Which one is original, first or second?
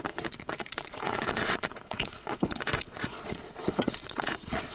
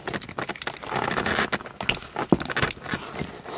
second